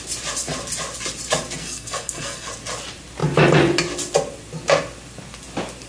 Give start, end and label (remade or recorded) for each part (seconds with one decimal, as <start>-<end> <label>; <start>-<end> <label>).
0.0-1.6 recorded; 1.6-2.5 remade; 2.5-5.9 recorded